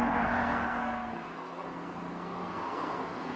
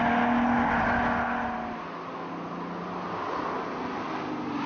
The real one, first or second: second